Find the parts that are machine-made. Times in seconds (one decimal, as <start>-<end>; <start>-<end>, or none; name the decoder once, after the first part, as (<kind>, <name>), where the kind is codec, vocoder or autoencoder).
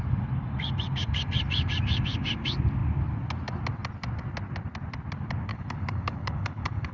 5.5-6.9 (codec, HILCodec)